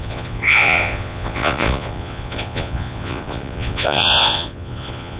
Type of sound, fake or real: fake